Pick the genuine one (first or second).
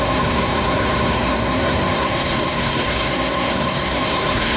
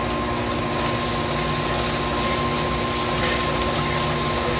second